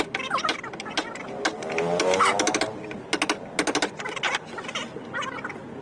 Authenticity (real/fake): real